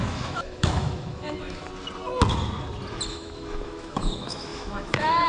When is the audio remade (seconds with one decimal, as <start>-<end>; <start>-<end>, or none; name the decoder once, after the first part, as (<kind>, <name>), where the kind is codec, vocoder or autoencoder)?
0.0-1.6 (autoencoder, DAC-VAE); 3.1-5.3